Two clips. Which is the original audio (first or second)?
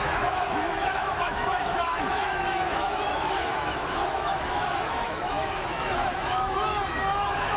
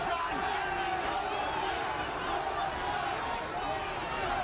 second